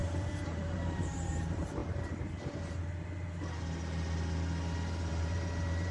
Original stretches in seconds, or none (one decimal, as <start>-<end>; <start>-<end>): 1.8-5.1

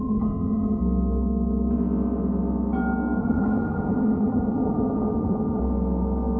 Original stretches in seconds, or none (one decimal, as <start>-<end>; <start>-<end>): 0.8-3.2; 5.6-6.4

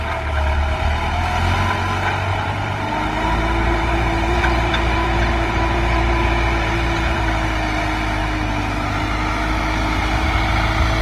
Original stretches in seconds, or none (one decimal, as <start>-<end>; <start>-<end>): 0.0-2.3; 7.2-11.0

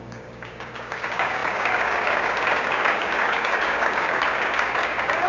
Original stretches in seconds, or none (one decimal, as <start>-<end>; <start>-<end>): none

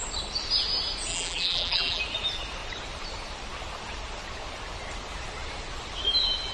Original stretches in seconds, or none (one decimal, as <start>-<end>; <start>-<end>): 0.0-1.1; 2.0-6.5

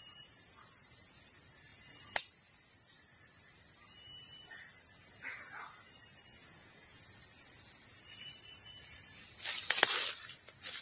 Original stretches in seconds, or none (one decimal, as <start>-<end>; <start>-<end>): 0.0-6.4; 7.0-10.8

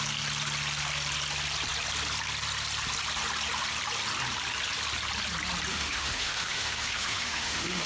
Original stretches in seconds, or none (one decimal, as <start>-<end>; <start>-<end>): 0.0-5.7